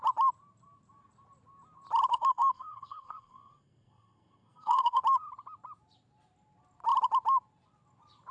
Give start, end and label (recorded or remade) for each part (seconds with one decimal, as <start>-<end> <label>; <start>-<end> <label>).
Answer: 0.0-2.1 recorded; 2.1-5.0 remade; 5.0-8.3 recorded